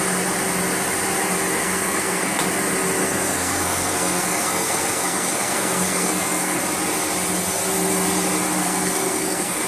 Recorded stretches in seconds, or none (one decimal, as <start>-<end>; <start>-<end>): 0.0-1.6; 2.4-3.0; 6.6-8.6

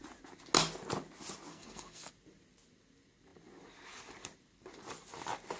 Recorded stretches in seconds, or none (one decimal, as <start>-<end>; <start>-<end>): 0.0-1.5; 2.1-5.6

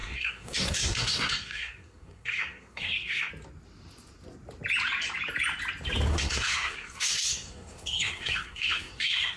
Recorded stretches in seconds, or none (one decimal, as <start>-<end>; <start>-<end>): 3.3-6.1